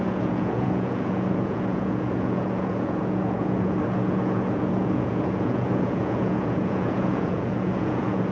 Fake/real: fake